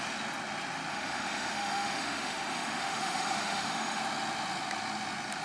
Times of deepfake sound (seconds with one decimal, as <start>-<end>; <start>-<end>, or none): 0.9-4.0